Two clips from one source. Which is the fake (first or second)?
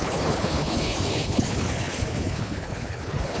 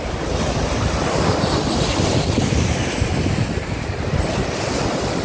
first